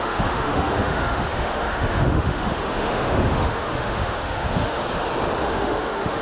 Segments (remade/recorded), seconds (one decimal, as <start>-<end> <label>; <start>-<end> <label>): 0.0-4.8 remade; 4.8-5.4 recorded; 5.4-6.2 remade